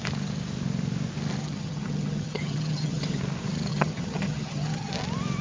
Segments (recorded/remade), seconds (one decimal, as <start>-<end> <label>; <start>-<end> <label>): 0.0-1.4 recorded; 1.4-3.2 remade; 3.2-3.7 recorded; 3.7-4.9 remade; 4.9-5.4 recorded